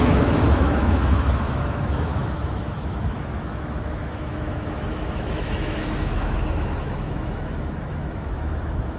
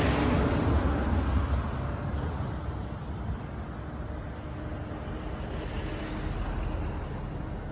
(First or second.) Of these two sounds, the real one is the second